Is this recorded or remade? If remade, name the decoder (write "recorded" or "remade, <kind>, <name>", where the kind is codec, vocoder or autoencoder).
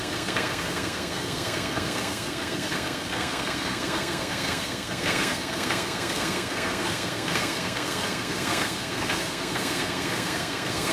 remade, codec, SNAC